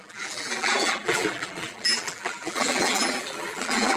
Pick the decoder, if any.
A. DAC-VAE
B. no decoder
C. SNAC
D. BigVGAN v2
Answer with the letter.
D